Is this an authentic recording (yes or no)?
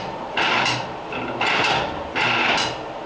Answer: yes